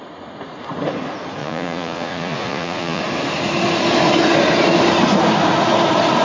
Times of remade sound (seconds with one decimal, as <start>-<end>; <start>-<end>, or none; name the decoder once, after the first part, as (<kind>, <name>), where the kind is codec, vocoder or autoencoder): 1.4-3.0 (vocoder, Vocos)